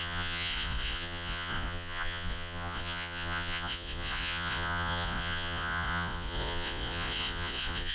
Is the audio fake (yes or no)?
yes